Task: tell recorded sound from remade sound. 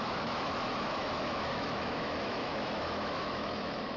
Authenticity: remade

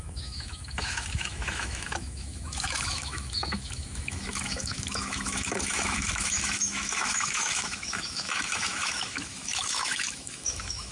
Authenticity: remade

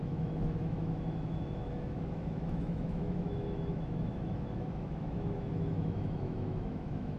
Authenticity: remade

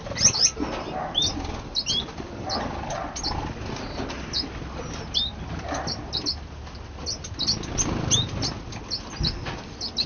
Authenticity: recorded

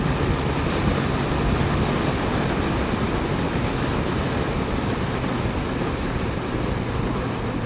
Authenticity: recorded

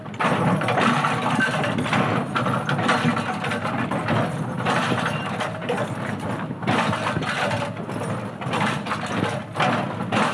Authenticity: recorded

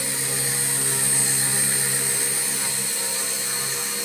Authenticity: recorded